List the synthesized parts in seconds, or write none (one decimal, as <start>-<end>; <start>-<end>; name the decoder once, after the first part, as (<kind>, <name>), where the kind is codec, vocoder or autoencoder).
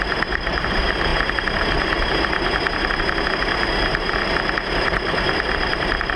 0.0-1.1 (vocoder, BigVGAN v2); 3.3-6.2